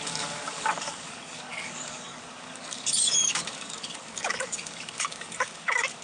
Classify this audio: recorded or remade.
remade